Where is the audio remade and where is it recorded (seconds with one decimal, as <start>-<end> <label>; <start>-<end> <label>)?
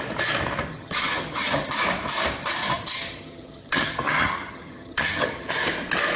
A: 0.0-0.7 recorded; 0.7-1.7 remade; 1.7-2.6 recorded; 2.6-5.5 remade; 5.5-6.2 recorded